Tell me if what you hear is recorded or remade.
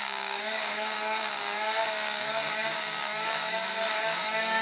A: remade